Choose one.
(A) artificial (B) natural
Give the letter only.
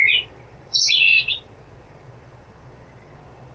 A